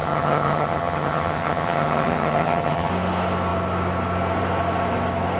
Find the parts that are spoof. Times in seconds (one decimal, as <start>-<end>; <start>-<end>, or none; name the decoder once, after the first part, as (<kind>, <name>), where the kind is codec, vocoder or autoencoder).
0.0-2.9 (vocoder, HiFi-GAN)